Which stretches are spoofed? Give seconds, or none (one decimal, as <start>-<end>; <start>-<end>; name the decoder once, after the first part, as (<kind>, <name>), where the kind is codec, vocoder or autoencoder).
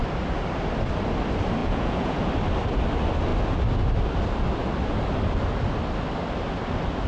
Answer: 1.6-2.3 (vocoder, Vocos)